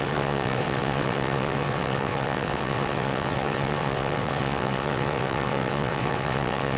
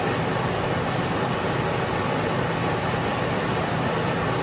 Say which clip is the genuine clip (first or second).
second